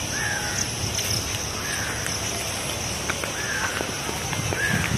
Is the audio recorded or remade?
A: recorded